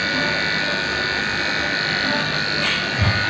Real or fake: real